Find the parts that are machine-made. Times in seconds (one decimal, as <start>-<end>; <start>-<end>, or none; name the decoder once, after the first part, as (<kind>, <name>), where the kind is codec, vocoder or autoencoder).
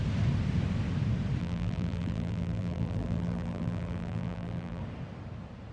1.4-4.8 (vocoder, BigVGAN v2)